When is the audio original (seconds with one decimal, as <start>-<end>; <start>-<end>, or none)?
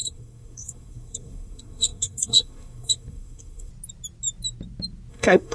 3.7-5.1